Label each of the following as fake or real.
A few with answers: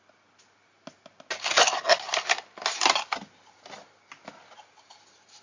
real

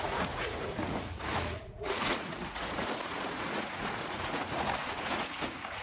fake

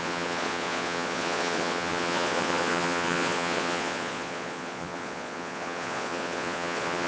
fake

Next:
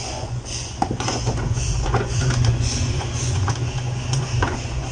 fake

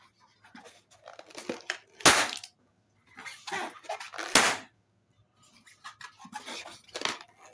real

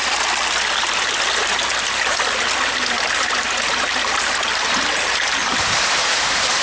real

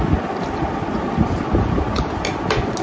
real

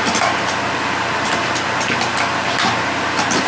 real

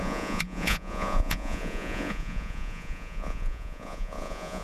fake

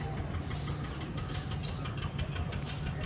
real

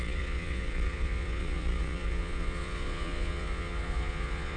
fake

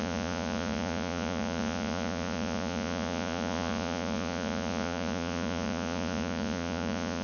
fake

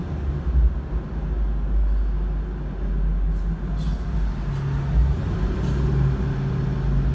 real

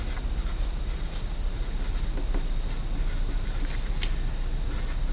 real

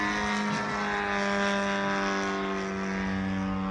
real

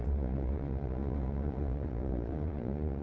fake